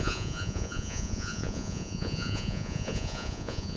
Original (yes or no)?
no